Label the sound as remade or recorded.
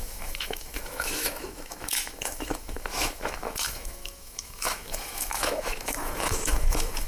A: remade